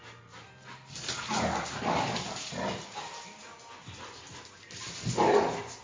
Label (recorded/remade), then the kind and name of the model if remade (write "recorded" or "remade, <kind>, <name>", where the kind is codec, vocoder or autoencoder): recorded